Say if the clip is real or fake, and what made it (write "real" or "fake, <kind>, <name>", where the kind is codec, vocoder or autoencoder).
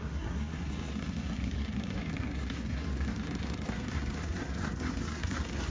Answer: fake, codec, SNAC